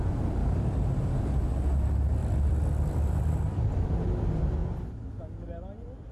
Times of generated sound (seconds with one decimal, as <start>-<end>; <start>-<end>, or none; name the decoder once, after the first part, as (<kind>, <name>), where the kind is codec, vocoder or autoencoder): 0.4-1.3 (vocoder, BigVGAN v2); 2.2-3.7